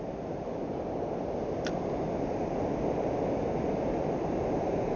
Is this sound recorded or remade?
recorded